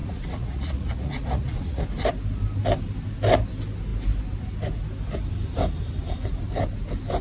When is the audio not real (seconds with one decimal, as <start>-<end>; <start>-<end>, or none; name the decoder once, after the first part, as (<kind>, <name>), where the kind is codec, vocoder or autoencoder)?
0.0-1.8 (vocoder, Vocos)